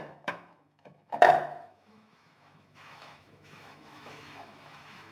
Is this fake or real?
fake